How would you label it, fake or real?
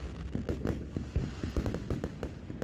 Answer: real